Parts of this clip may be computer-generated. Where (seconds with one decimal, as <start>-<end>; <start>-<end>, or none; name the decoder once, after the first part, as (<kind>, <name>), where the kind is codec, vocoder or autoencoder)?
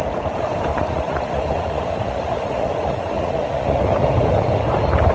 0.7-3.8 (vocoder, Vocos)